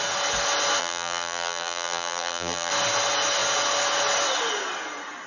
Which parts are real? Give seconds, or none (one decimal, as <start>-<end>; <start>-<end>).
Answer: 0.0-0.8; 2.7-5.3

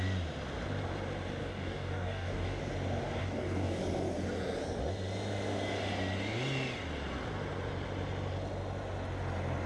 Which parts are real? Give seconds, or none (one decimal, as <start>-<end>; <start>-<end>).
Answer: 0.0-1.4; 2.6-3.2; 3.8-9.7

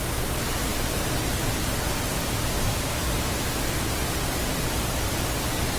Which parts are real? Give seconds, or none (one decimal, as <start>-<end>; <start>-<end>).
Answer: 0.0-5.8

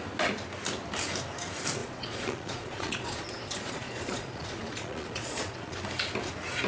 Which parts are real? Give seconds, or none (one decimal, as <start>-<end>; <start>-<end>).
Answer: 0.0-1.8; 5.8-6.7

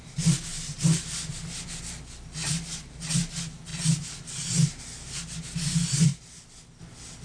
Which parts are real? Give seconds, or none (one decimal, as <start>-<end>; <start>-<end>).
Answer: 0.0-7.2

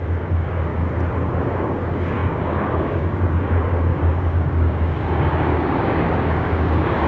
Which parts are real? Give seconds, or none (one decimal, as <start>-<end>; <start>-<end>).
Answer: 0.7-1.5

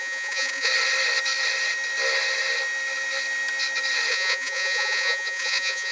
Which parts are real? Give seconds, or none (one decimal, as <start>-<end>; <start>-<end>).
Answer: 0.7-4.1